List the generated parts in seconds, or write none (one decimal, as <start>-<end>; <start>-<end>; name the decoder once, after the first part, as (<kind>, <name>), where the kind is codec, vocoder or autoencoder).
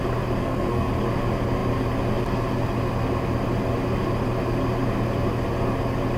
0.4-0.9 (codec, SNAC)